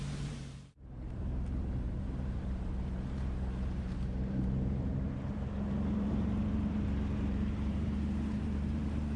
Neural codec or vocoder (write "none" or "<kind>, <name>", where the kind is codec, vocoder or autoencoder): vocoder, BigVGAN v2